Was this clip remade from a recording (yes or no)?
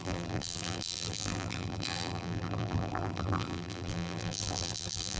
yes